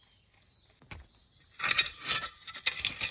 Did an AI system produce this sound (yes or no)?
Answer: no